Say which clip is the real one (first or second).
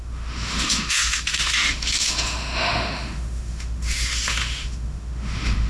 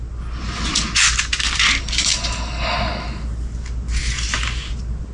second